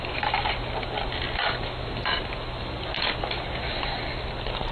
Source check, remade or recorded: recorded